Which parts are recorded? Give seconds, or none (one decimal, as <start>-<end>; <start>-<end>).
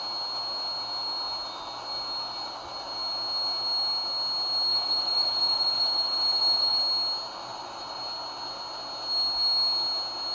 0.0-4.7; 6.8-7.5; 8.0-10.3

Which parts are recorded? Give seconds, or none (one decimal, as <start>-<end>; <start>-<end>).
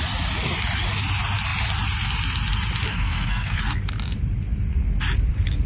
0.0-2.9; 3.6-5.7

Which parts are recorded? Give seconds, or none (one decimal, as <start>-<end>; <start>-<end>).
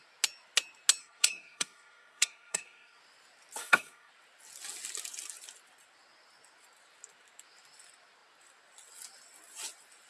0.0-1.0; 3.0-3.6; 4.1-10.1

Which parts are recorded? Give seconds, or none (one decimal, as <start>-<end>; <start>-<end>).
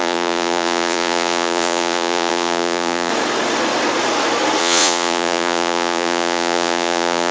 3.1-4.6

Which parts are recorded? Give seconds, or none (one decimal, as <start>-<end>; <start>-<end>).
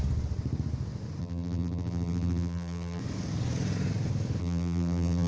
0.0-1.2; 3.0-4.4